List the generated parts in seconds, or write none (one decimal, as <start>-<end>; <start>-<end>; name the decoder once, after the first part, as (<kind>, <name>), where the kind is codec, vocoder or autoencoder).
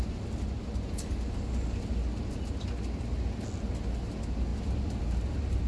none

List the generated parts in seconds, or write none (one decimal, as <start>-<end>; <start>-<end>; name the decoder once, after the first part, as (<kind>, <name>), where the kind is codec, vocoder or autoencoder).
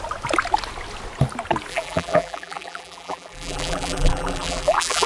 1.7-5.1 (vocoder, BigVGAN v2)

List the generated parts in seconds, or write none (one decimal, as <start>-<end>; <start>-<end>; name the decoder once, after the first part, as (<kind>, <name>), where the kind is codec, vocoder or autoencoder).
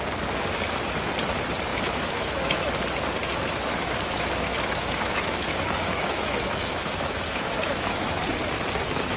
1.7-2.7 (autoencoder, DAC-VAE); 3.7-8.2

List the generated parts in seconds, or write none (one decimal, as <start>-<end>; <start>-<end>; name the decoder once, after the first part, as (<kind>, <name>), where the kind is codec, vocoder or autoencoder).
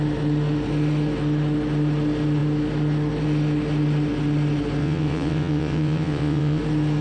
4.8-6.6 (vocoder, WaveNeXt)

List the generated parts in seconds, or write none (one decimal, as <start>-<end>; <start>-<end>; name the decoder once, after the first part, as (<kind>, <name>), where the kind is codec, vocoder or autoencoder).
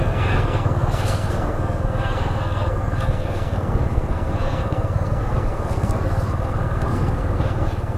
0.0-8.0 (codec, SNAC)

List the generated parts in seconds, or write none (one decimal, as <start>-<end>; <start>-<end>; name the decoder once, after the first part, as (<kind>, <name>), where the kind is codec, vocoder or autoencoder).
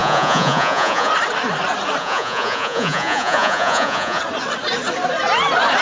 0.0-1.1 (vocoder, Vocos); 2.0-4.2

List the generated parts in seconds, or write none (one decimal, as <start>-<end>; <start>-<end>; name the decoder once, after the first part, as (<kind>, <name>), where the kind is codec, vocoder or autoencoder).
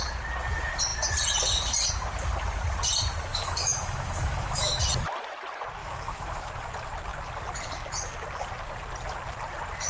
3.3-4.8 (autoencoder, DAC-VAE); 5.8-6.5